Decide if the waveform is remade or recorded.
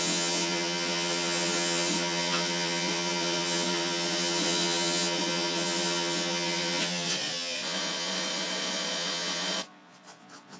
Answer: remade